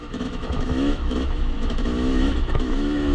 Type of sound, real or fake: fake